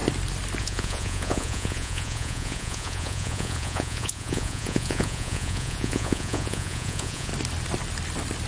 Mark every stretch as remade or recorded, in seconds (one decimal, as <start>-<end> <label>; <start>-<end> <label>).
0.0-0.6 recorded; 0.6-7.3 remade; 7.3-8.5 recorded